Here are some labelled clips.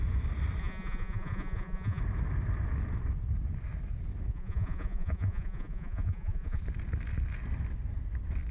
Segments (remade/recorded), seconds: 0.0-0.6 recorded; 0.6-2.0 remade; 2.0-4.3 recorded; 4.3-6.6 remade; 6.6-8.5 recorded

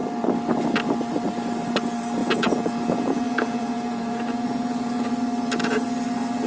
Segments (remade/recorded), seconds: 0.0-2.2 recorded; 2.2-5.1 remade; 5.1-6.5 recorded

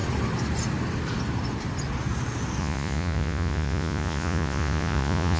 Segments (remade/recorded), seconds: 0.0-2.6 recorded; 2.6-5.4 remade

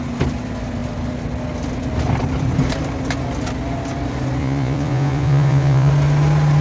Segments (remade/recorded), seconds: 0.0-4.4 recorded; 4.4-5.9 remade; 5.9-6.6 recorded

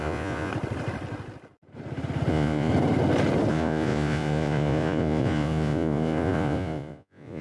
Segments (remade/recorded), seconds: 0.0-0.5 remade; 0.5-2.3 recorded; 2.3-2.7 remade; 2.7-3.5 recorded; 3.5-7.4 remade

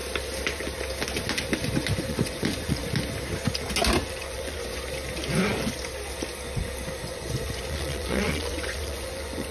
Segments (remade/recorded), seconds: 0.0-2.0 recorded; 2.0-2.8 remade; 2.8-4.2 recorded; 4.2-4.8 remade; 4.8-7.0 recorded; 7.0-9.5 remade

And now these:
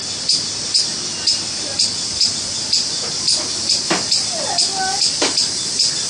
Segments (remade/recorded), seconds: 0.0-6.1 recorded